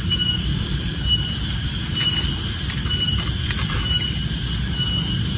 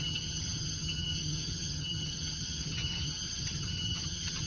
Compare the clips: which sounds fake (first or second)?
second